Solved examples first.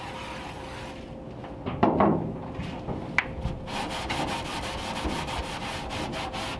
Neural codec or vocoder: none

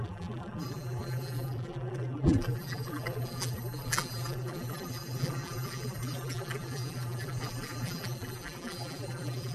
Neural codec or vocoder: vocoder, BigVGAN v2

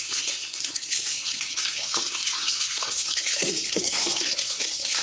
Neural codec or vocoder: codec, SNAC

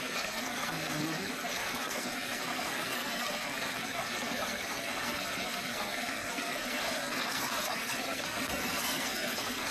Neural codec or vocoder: codec, SNAC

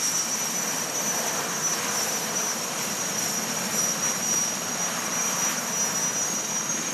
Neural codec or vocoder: none